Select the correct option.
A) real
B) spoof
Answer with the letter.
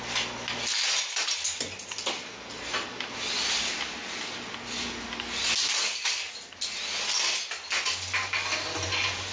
A